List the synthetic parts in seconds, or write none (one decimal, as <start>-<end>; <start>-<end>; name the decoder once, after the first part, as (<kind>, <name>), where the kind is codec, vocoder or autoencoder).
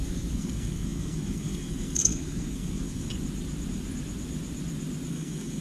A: 0.0-3.1 (codec, SNAC); 5.1-5.6